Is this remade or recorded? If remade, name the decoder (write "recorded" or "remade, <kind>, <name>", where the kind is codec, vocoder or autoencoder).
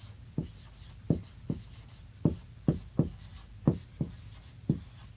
recorded